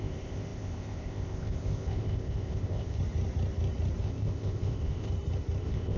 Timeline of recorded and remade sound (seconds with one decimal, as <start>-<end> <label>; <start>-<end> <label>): 0.0-3.0 remade; 3.0-4.0 recorded; 4.0-5.1 remade; 5.1-5.6 recorded; 5.6-6.0 remade